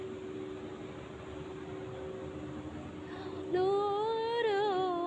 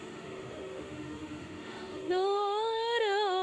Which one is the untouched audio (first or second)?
first